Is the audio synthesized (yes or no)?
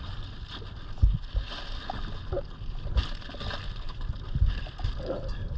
no